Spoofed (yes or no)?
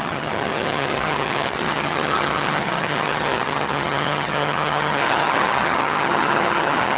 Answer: yes